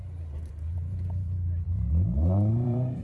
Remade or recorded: remade